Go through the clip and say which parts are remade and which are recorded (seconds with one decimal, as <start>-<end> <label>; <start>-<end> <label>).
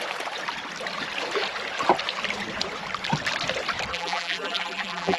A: 0.0-3.9 recorded; 3.9-5.2 remade